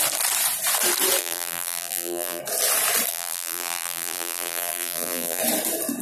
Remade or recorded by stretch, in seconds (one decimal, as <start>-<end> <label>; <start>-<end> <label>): 0.0-1.2 recorded; 1.2-2.4 remade; 2.4-3.1 recorded; 3.1-5.4 remade; 5.4-6.0 recorded